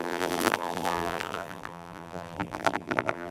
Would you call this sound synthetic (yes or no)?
yes